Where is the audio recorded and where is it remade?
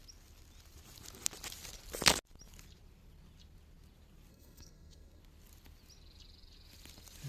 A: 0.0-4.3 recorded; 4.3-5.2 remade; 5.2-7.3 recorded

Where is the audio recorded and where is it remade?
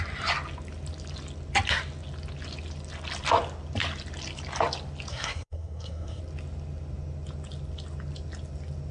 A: 0.0-5.1 recorded; 5.1-6.2 remade; 6.2-8.9 recorded